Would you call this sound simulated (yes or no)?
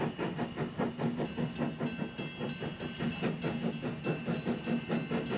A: no